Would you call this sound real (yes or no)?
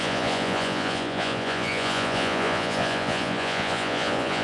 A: no